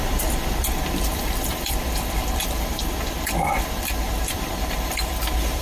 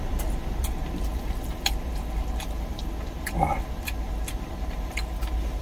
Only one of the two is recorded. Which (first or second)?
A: second